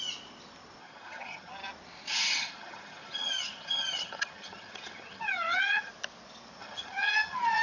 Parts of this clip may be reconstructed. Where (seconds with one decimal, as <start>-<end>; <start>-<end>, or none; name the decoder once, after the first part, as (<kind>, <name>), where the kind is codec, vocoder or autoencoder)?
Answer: 0.8-1.5 (vocoder, HiFi-GAN); 2.1-5.9; 6.6-7.6